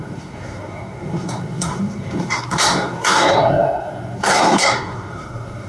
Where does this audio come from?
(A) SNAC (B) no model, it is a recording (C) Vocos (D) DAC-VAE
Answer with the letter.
A